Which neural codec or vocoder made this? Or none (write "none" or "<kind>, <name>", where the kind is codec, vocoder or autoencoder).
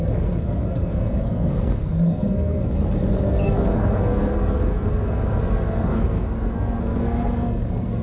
codec, SNAC